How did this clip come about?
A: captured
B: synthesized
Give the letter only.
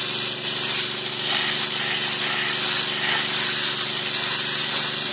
A